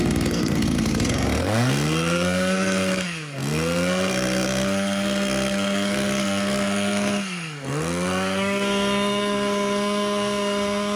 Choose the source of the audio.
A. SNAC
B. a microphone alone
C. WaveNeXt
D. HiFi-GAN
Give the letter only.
A